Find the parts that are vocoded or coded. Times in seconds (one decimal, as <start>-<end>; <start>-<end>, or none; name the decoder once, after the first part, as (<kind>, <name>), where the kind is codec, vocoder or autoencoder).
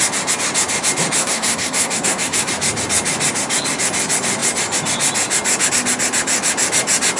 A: 1.2-2.5 (codec, SNAC)